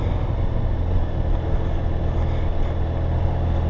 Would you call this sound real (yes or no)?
yes